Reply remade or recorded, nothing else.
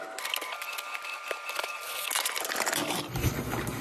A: recorded